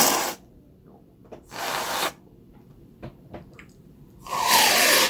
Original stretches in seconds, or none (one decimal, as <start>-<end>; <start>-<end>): none